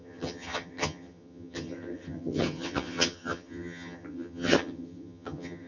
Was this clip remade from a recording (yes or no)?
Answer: yes